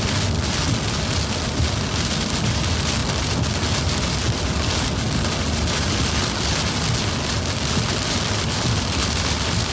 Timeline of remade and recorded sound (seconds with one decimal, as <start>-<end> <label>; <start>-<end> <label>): 0.0-9.7 recorded